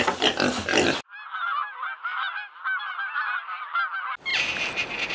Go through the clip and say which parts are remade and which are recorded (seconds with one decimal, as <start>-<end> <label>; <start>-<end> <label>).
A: 0.0-5.1 recorded